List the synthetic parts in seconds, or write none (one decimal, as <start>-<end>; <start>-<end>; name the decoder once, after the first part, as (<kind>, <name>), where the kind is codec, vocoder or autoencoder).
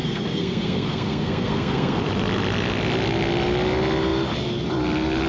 0.0-2.0 (codec, SNAC)